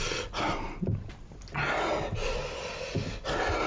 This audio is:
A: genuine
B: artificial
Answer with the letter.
A